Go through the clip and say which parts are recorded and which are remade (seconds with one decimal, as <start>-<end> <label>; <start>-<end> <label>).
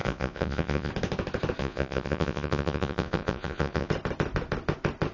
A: 0.0-0.9 remade; 0.9-1.6 recorded; 1.6-3.9 remade; 3.9-5.1 recorded